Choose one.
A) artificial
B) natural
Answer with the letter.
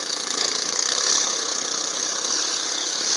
A